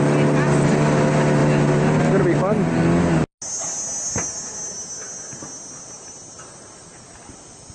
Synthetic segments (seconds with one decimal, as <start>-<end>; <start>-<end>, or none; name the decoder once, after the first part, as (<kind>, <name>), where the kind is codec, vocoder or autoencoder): none